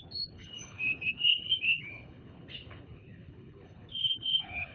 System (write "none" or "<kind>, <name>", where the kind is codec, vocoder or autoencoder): codec, HILCodec